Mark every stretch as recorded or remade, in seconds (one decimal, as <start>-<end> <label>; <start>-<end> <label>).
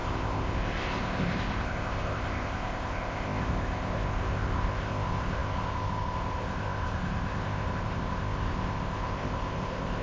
0.0-10.0 remade